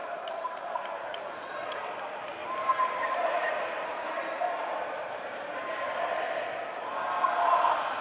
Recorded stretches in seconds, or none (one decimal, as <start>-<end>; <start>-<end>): 1.9-2.4; 6.1-8.0